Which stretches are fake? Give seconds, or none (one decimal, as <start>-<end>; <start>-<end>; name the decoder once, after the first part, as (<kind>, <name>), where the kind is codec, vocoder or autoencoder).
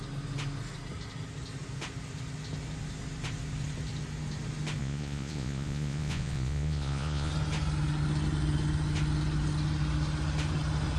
4.8-7.3 (vocoder, Vocos)